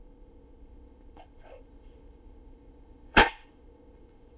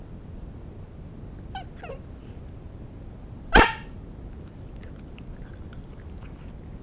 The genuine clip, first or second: second